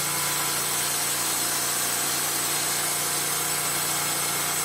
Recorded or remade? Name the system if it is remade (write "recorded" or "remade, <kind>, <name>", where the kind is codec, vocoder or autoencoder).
recorded